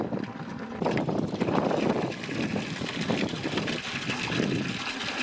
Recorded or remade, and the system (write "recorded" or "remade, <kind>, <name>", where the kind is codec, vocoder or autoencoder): recorded